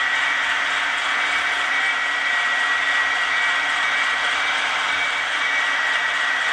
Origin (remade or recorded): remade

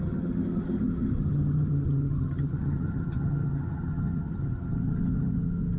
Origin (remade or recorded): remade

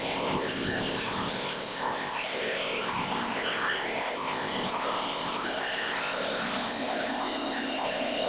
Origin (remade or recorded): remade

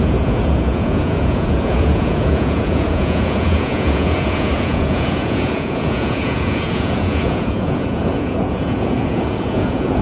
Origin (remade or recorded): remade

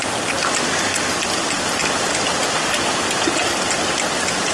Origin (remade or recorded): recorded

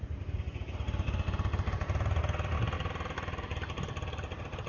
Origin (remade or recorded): recorded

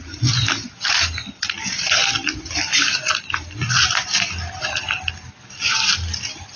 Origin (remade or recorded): recorded